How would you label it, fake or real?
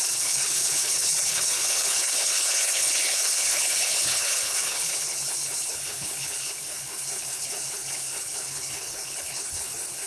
fake